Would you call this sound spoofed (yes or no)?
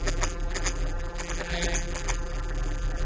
yes